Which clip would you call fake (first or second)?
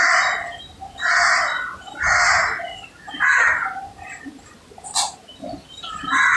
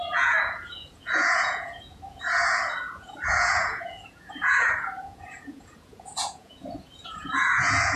second